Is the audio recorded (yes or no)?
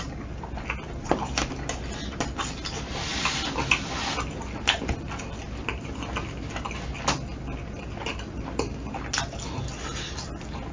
yes